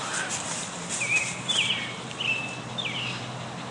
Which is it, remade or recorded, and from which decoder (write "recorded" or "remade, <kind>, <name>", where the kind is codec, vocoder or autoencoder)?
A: recorded